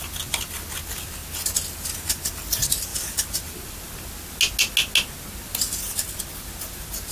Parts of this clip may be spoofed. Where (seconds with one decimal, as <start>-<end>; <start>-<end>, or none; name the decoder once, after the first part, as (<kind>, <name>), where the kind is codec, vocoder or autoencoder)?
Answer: none